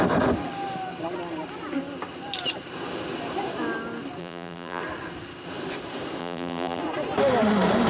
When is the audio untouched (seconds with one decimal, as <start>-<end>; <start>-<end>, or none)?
0.0-4.2; 4.8-6.2; 6.8-7.9